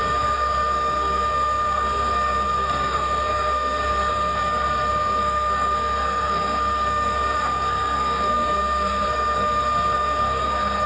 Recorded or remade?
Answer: remade